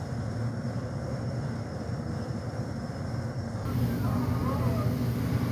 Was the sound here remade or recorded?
recorded